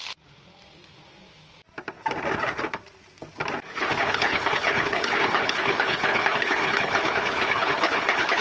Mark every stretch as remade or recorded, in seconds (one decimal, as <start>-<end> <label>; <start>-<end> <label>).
0.0-4.0 recorded; 4.0-8.4 remade